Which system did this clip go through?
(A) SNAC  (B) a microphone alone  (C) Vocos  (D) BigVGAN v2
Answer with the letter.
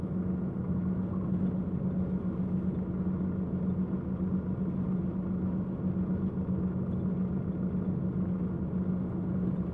B